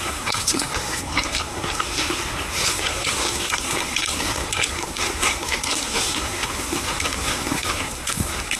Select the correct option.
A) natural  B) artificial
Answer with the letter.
B